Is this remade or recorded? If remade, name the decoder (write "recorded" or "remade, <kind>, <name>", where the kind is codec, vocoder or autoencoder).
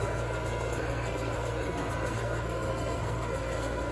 remade, codec, SNAC